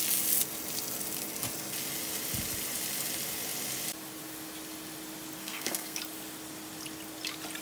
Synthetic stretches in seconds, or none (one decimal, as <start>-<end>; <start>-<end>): 5.4-6.0